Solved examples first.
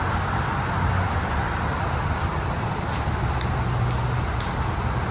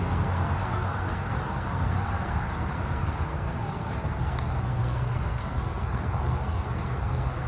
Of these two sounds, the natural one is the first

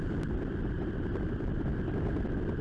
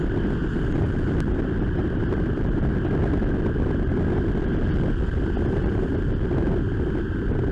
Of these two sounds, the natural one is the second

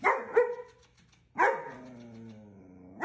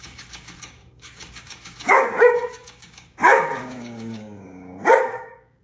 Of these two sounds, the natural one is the first